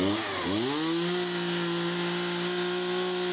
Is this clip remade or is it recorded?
recorded